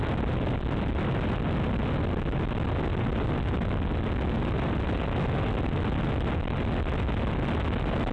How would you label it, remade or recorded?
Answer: recorded